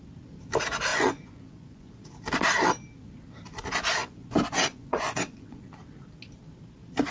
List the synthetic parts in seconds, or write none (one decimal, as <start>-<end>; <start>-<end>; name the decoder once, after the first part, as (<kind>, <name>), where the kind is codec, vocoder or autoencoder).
0.9-1.9 (vocoder, Vocos); 4.0-5.6